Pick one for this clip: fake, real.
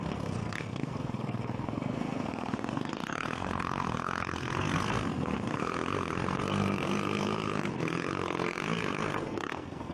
fake